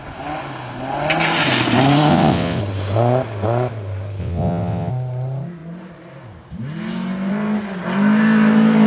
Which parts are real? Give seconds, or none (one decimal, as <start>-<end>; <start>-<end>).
0.0-2.1; 2.6-4.2; 4.9-8.9